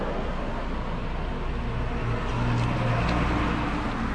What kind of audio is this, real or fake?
real